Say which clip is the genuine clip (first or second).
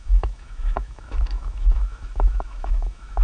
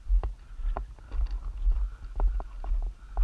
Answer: second